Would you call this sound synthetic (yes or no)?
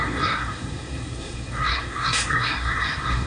yes